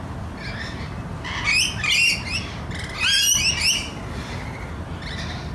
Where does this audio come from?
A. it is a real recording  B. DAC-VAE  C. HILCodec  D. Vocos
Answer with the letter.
A